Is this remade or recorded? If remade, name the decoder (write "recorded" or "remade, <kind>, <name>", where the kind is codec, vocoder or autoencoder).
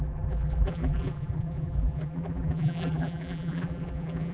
remade, vocoder, BigVGAN v2